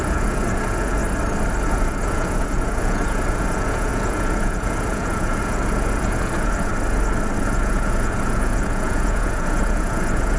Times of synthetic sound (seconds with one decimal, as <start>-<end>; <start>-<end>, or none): 0.0-1.0; 1.7-6.7; 7.4-10.4

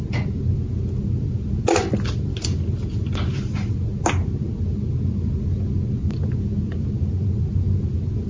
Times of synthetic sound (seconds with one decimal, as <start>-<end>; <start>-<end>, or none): none

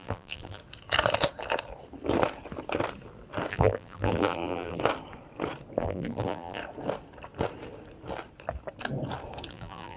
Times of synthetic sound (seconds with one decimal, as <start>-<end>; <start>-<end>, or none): 0.0-0.6; 3.5-4.8; 5.8-6.6; 9.5-10.0

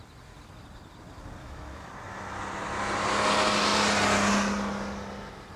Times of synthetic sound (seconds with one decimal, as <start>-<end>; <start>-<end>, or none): 1.4-1.9

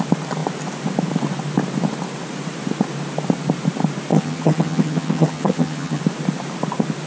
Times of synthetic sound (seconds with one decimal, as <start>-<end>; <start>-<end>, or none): 4.1-6.0

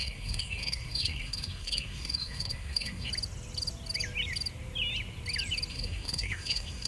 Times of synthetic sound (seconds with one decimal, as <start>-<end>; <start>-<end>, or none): 0.0-3.1; 5.7-6.9

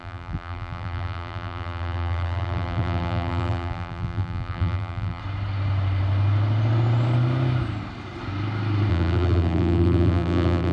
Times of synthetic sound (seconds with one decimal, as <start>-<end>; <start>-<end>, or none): 0.0-5.2; 8.9-10.7

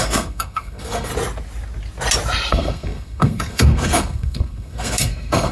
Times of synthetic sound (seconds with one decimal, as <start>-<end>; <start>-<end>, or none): 0.0-1.1; 2.5-5.5